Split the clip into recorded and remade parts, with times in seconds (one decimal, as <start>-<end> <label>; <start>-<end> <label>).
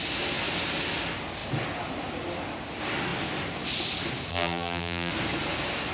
0.0-4.3 recorded; 4.3-5.1 remade; 5.1-5.9 recorded